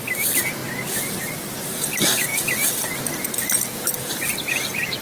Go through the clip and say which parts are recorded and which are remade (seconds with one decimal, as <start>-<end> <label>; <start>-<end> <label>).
0.0-0.6 remade; 0.6-1.2 recorded; 1.2-5.0 remade